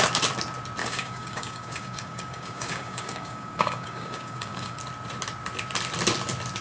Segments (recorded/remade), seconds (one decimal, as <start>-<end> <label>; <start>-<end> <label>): 0.0-0.8 recorded; 0.8-4.8 remade; 4.8-6.6 recorded